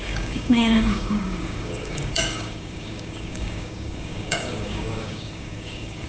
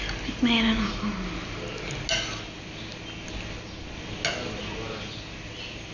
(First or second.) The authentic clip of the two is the second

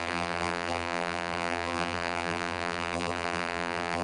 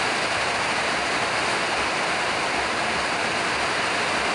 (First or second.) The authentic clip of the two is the second